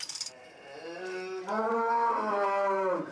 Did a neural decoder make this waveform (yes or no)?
yes